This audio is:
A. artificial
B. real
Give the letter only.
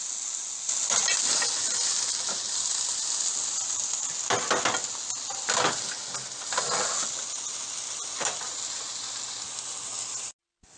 B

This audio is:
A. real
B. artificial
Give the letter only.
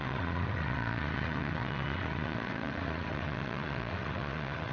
B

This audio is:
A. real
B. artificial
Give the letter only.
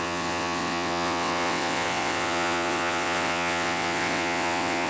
B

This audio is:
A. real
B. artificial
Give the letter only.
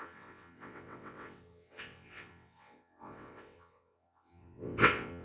B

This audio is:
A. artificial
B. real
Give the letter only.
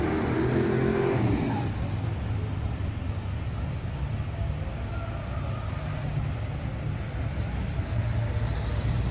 B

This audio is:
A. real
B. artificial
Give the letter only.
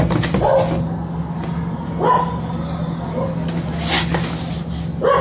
A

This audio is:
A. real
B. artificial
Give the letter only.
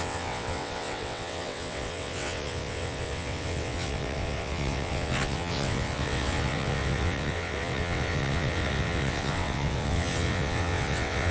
B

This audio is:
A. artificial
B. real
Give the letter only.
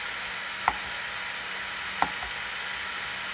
B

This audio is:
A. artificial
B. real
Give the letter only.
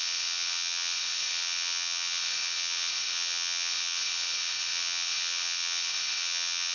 A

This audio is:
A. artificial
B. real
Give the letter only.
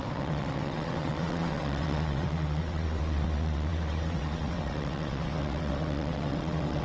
A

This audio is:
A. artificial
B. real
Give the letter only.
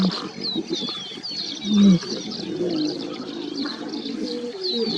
B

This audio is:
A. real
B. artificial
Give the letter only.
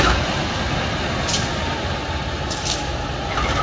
A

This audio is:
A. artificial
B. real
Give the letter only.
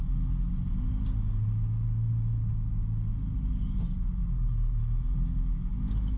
B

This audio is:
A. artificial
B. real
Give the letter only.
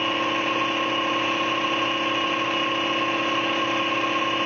B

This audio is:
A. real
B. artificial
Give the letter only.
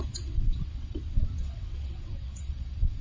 B